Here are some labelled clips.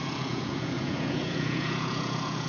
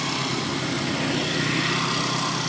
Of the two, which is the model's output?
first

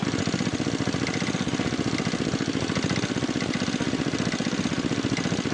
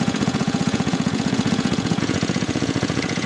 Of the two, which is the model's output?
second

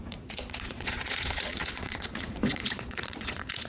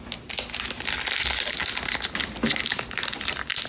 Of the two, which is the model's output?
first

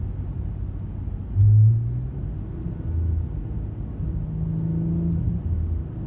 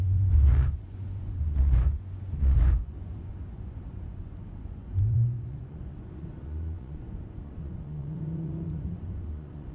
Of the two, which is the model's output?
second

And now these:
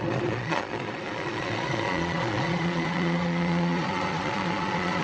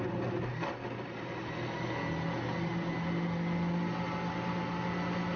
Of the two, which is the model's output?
first